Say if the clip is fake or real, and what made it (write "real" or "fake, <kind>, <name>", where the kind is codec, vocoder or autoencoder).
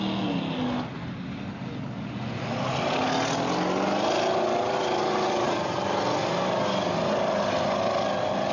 real